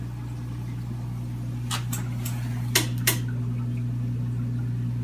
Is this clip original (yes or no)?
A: yes